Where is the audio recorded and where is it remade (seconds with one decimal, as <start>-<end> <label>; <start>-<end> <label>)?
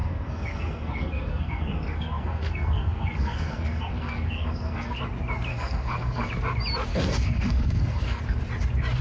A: 0.0-5.0 remade; 5.0-5.5 recorded; 5.5-6.3 remade; 6.3-6.9 recorded; 6.9-8.2 remade; 8.2-9.0 recorded